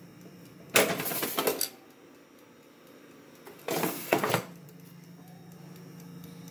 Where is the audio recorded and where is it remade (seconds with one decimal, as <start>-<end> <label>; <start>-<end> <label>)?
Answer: 0.0-3.8 recorded; 3.8-4.3 remade; 4.3-6.5 recorded